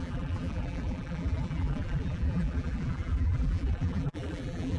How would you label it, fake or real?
fake